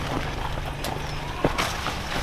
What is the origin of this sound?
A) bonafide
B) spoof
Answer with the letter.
A